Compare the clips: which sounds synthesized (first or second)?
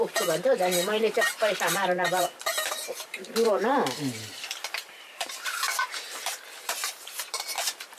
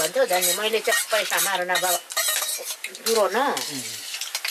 first